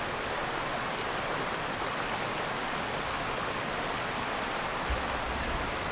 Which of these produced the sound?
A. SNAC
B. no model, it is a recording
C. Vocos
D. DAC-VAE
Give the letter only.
B